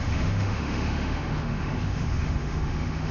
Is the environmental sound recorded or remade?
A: remade